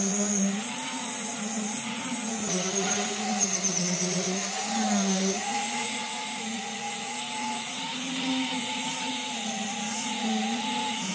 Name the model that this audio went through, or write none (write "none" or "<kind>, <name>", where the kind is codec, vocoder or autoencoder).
vocoder, Vocos